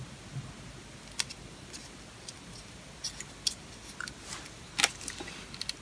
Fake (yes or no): no